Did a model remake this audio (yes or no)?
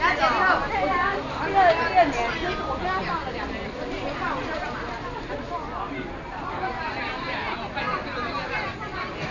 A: no